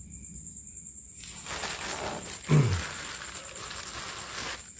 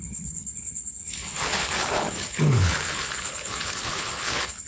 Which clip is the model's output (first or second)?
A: second